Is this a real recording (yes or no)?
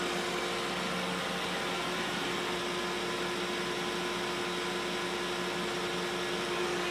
yes